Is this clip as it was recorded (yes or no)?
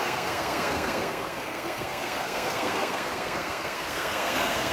no